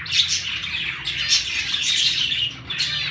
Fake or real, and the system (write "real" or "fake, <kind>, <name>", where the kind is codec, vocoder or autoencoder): real